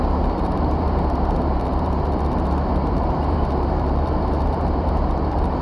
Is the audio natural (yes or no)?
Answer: no